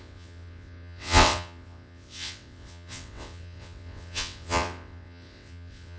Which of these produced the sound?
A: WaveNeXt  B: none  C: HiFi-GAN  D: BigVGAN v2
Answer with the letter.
A